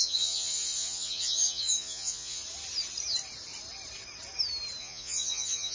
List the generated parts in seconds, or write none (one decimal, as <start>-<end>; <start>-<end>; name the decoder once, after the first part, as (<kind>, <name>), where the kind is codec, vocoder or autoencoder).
0.0-2.4 (vocoder, Vocos); 4.8-5.7